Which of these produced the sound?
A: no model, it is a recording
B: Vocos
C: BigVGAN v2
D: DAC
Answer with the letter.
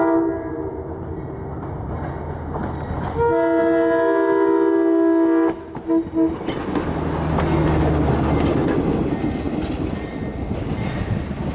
A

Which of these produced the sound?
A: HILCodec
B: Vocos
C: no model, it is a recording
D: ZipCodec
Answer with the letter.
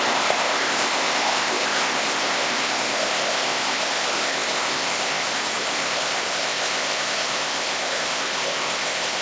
D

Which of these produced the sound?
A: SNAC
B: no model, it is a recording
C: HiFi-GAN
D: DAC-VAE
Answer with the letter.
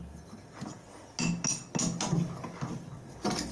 B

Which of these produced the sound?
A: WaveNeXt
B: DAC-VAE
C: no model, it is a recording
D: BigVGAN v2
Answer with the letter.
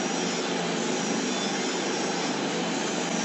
C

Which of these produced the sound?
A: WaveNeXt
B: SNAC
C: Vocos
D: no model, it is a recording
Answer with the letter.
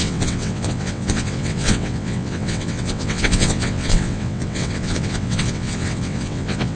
A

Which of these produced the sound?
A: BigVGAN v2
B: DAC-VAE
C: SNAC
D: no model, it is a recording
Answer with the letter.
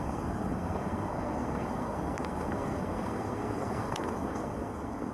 C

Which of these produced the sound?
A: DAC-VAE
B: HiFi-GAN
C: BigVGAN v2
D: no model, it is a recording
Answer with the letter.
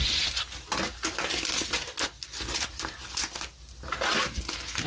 D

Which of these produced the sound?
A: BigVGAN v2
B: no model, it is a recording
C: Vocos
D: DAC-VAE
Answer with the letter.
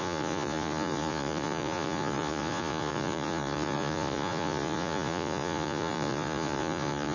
C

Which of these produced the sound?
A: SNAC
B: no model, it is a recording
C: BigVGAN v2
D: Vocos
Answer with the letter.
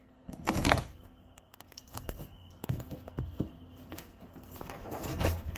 A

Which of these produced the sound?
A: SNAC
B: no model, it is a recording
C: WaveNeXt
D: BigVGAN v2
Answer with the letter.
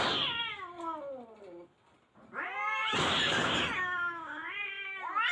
B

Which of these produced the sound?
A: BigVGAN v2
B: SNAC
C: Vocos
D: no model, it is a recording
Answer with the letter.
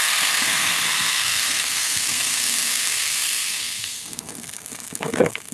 B